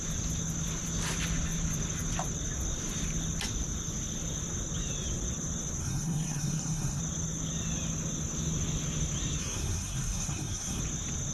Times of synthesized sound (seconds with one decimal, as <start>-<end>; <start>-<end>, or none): 5.8-7.0; 9.4-10.8